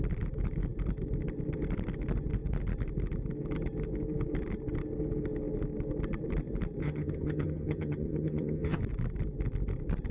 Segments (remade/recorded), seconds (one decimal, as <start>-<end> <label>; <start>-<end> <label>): 0.0-6.8 recorded; 6.8-8.8 remade; 8.8-10.1 recorded